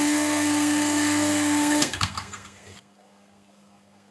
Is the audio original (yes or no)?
no